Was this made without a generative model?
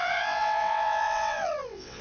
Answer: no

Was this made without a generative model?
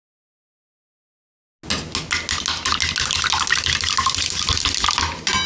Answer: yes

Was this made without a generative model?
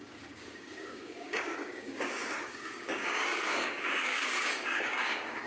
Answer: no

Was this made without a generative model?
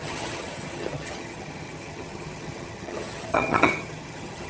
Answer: no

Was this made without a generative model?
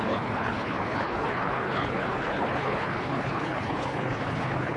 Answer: no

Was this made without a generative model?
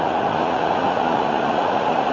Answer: no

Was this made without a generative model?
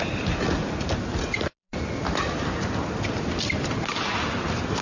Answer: yes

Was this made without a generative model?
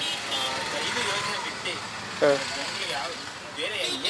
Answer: yes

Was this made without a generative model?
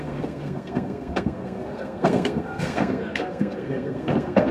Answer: no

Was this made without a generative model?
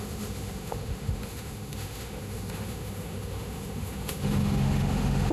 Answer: no